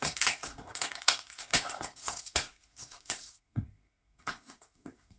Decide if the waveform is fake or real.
fake